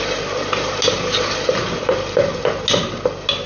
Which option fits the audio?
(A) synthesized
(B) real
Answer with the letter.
B